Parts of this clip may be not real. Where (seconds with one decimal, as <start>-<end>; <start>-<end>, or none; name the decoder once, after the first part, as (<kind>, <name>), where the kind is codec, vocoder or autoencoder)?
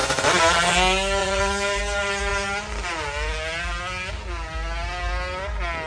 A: 0.0-0.5 (vocoder, Vocos); 1.2-1.8